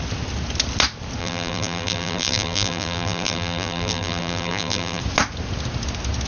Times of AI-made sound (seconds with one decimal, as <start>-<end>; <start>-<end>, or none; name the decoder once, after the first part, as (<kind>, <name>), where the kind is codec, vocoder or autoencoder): 1.2-5.0 (vocoder, BigVGAN v2)

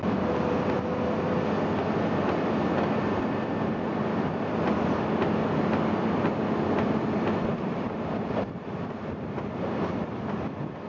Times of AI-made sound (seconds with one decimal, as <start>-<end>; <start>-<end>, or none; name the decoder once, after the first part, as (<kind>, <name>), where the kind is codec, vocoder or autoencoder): 7.5-10.1 (vocoder, BigVGAN v2)

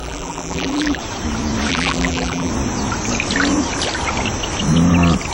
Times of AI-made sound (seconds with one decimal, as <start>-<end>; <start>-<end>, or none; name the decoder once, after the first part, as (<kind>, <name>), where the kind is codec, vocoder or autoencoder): 0.0-1.0 (vocoder, BigVGAN v2); 1.7-2.5

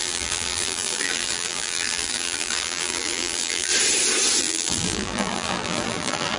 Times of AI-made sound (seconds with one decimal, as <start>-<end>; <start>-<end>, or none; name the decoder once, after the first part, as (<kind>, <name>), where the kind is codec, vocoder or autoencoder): 0.0-3.7 (vocoder, BigVGAN v2); 4.4-6.4

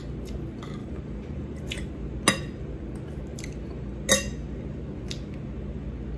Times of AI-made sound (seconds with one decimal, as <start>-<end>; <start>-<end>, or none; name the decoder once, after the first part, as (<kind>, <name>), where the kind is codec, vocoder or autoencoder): 0.8-1.9 (vocoder, BigVGAN v2)

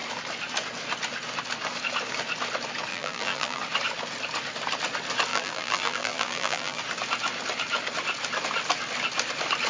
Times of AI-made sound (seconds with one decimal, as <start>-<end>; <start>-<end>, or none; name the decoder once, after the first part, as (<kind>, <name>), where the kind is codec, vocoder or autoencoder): 2.9-3.6 (vocoder, BigVGAN v2); 5.3-6.8

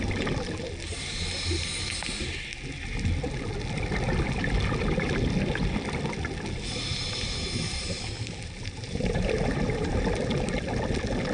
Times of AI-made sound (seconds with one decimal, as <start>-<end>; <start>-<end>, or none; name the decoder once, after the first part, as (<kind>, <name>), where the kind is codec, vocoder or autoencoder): 0.9-1.9 (vocoder, BigVGAN v2); 6.9-8.0; 8.6-9.9